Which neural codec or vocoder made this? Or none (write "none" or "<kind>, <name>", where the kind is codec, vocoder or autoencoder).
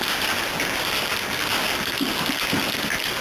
none